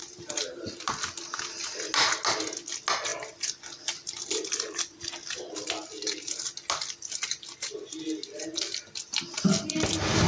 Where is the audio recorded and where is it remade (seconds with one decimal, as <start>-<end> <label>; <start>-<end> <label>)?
0.0-3.1 recorded; 3.1-5.7 remade; 5.7-10.3 recorded